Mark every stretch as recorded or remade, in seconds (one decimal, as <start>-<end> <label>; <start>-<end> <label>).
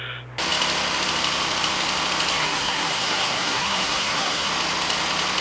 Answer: 0.0-2.3 recorded; 2.3-4.5 remade; 4.5-5.4 recorded